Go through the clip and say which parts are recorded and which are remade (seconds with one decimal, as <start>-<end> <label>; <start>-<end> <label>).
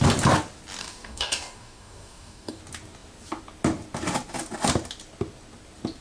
0.0-0.8 recorded; 0.8-2.6 remade; 2.6-6.0 recorded